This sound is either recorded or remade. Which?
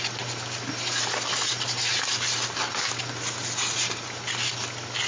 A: recorded